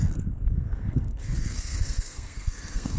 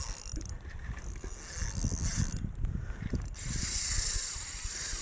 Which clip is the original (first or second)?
second